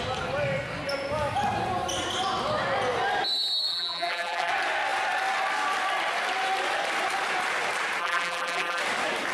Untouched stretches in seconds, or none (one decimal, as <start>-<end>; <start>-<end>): 0.0-3.7; 4.5-8.0; 8.8-9.3

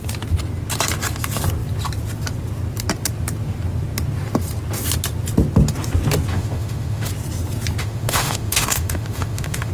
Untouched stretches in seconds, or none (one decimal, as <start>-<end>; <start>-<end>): 0.0-6.3; 7.1-7.8